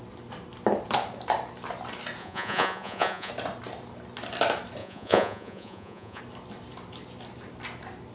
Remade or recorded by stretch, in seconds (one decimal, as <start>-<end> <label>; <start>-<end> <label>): 0.0-2.2 recorded; 2.2-3.3 remade; 3.3-4.8 recorded; 4.8-6.2 remade; 6.2-8.1 recorded